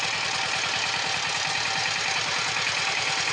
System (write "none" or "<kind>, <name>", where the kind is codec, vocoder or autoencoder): none